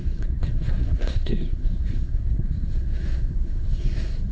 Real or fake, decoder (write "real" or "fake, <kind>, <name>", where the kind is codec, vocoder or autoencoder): fake, codec, SNAC